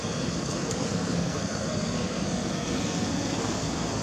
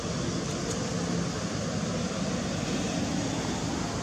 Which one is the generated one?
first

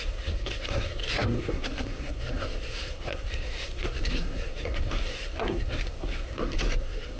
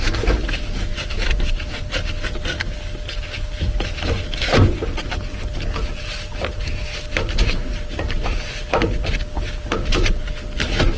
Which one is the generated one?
first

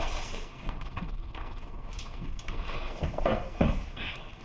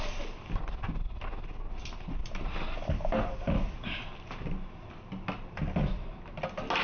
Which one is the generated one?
first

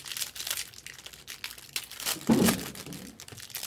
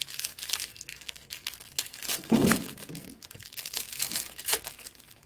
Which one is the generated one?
second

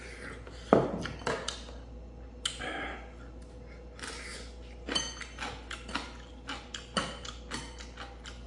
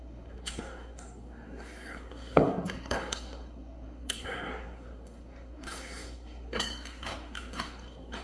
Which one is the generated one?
second